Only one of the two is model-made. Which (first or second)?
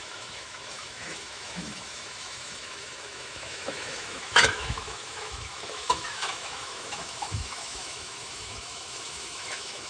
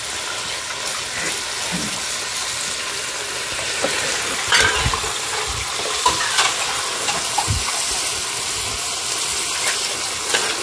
first